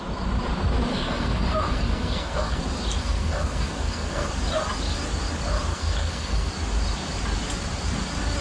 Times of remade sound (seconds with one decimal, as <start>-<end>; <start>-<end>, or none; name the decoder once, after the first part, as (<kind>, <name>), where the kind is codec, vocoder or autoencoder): 0.9-2.6 (codec, SNAC); 3.0-4.3; 5.7-6.5